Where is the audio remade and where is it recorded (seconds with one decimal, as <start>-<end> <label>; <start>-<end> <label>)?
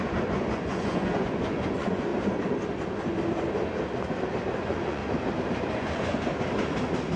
0.0-2.1 remade; 2.1-4.6 recorded; 4.6-5.0 remade; 5.0-5.7 recorded; 5.7-6.3 remade; 6.3-7.2 recorded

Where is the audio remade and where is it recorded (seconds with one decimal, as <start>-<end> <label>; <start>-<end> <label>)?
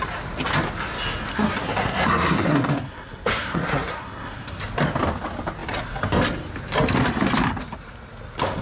0.0-1.3 recorded; 1.3-4.6 remade; 4.6-8.6 recorded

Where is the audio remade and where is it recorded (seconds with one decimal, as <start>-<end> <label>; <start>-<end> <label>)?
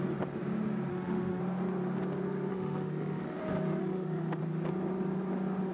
0.0-0.9 recorded; 0.9-1.4 remade; 1.4-2.5 recorded; 2.5-3.4 remade; 3.4-3.8 recorded; 3.8-4.4 remade; 4.4-5.7 recorded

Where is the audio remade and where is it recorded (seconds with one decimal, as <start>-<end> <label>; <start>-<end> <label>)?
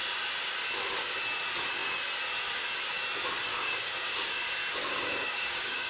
0.0-3.5 recorded; 3.5-4.4 remade; 4.4-4.9 recorded; 4.9-5.9 remade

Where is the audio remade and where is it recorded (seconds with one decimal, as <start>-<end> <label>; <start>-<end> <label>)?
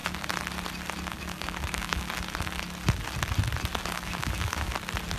0.0-1.1 recorded; 1.1-2.1 remade; 2.1-3.8 recorded; 3.8-4.7 remade; 4.7-5.2 recorded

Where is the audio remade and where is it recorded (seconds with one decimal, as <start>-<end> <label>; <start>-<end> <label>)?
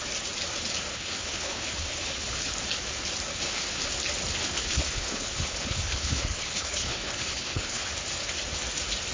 0.0-0.9 recorded; 0.9-2.5 remade; 2.5-3.3 recorded; 3.3-3.9 remade; 3.9-4.4 recorded; 4.4-7.9 remade; 7.9-9.1 recorded